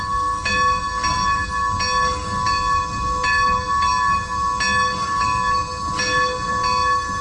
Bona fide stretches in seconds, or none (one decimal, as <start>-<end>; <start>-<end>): 0.0-7.2